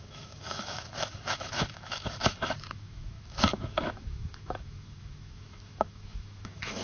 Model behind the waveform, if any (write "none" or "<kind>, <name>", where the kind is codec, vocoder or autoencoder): autoencoder, DAC-VAE